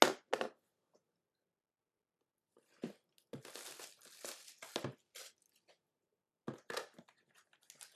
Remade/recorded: recorded